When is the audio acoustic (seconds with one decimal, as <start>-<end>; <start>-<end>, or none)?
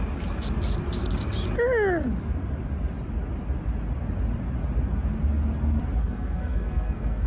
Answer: 0.0-6.0